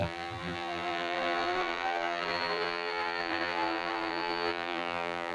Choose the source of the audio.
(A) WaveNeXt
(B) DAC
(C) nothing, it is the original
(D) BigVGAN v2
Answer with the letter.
D